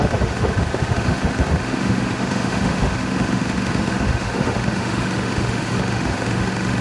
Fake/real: fake